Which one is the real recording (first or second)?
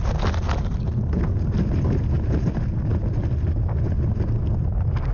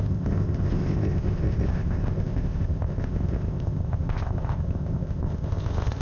first